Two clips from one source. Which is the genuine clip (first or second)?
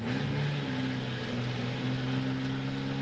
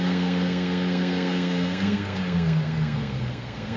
first